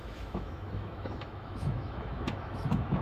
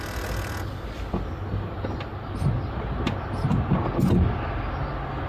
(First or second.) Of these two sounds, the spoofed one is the first